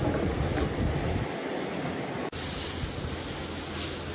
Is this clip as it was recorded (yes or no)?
yes